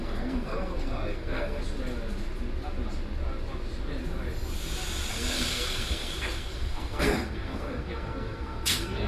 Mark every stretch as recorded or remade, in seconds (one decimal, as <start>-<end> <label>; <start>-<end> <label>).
0.0-1.6 remade; 1.6-5.1 recorded; 5.1-9.1 remade